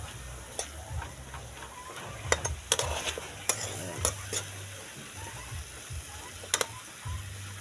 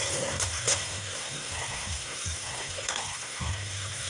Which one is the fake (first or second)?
second